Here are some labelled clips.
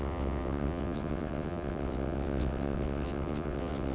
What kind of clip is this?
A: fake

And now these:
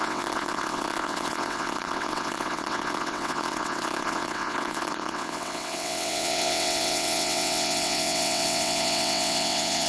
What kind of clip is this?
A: fake